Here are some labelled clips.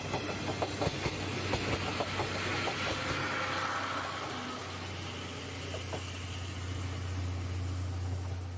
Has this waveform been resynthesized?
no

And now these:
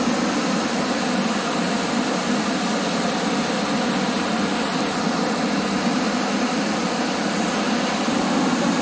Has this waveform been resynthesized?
no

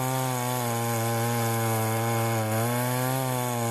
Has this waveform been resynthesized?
no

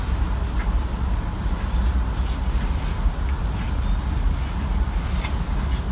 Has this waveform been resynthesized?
no